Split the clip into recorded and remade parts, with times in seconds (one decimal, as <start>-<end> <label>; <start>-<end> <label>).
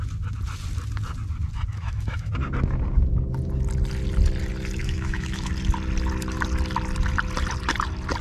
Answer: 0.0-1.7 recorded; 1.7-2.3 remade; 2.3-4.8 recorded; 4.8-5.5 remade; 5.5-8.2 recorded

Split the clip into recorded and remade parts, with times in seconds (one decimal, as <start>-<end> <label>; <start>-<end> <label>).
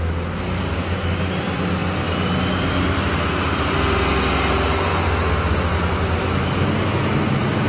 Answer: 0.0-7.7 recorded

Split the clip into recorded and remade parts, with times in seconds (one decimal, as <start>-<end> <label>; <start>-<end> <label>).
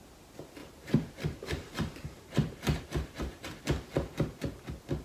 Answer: 0.0-0.6 recorded; 0.6-3.6 remade; 3.6-5.0 recorded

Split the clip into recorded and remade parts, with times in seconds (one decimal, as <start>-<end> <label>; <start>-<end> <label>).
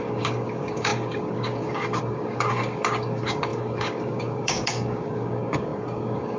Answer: 0.0-6.4 remade